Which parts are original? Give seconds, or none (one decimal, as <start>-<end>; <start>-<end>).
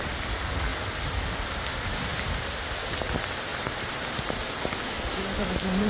0.0-3.5; 4.5-5.9